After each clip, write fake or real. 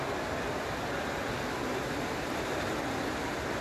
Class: real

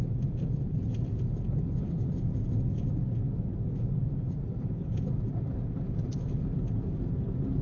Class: real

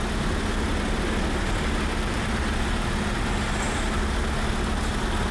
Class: real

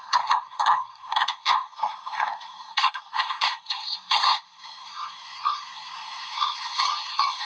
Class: fake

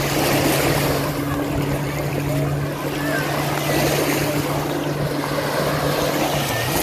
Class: real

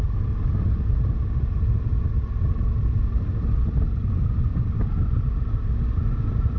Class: real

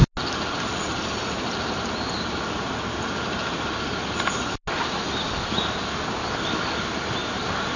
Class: real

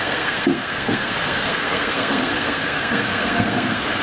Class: fake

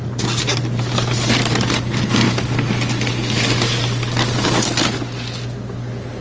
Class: real